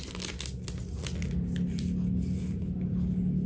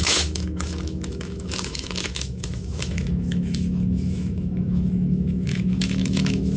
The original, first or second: first